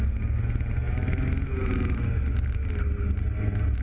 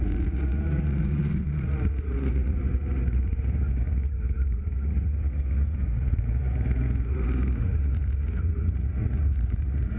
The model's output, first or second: second